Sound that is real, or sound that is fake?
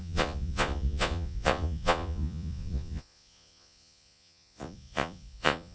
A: fake